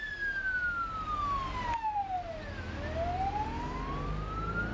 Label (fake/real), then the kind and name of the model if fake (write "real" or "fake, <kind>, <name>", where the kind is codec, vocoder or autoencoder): real